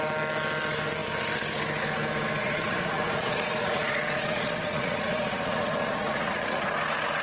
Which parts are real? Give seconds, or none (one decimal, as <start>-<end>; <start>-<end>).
0.0-2.4; 6.7-7.2